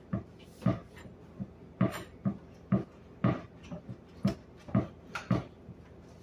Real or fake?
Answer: real